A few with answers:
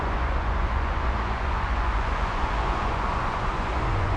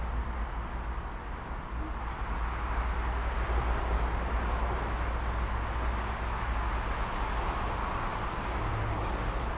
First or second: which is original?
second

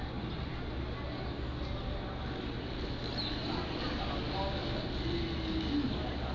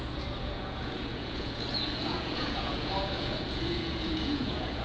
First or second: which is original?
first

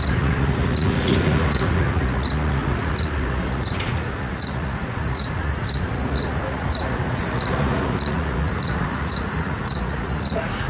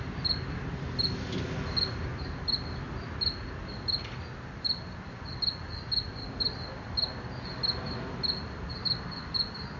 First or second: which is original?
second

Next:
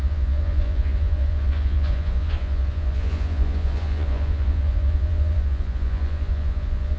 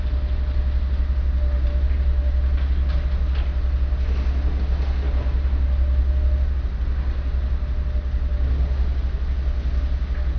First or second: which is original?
second